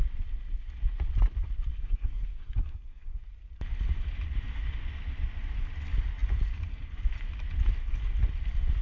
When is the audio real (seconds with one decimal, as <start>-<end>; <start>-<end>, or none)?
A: 0.0-1.7; 3.2-8.8